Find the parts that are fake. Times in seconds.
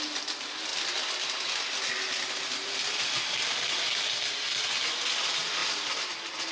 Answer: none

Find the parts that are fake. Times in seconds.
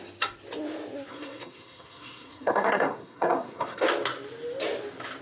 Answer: 1.1-3.8 (codec, SNAC)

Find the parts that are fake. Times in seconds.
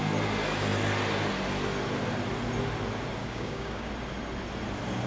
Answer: 3.2-3.9 (codec, DAC)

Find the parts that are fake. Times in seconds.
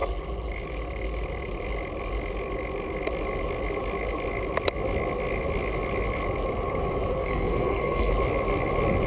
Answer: 7.2-8.1 (codec, SNAC)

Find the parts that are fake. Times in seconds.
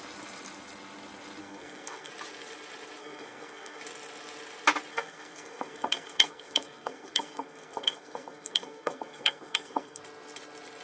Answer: 1.4-2.1 (codec, SNAC); 3.0-3.8; 4.9-10.0